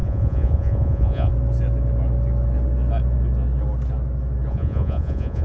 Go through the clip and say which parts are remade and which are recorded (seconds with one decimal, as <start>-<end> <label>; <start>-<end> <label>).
0.0-1.3 remade; 1.3-4.5 recorded; 4.5-5.4 remade